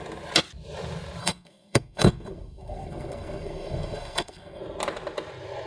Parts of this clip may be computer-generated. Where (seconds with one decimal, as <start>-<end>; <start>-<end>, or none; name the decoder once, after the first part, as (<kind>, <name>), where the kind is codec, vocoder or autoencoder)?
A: 1.2-4.6 (codec, SNAC)